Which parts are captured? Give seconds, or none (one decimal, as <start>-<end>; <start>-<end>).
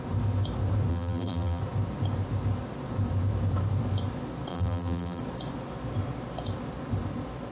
0.0-0.9; 1.6-4.5; 5.2-7.5